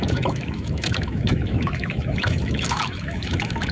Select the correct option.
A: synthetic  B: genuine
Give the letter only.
A